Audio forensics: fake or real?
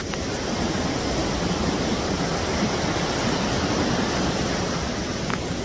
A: real